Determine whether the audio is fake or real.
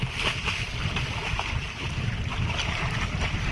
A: real